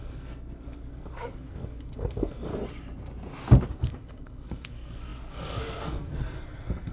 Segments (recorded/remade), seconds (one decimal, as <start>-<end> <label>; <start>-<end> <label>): 0.0-2.5 remade; 2.5-3.7 recorded; 3.7-6.9 remade